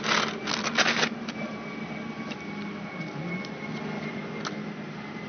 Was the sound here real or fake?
real